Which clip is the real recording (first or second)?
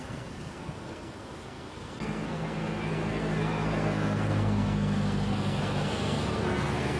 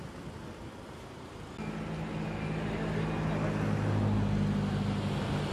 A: second